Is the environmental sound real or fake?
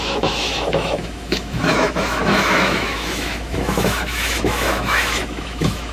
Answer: fake